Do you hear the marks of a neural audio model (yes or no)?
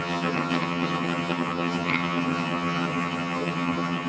yes